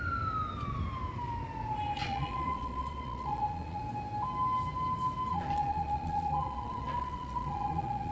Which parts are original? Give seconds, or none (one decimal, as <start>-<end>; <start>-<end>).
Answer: 0.0-2.0; 3.8-5.3